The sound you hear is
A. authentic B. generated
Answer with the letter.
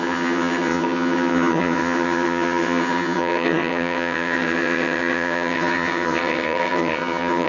B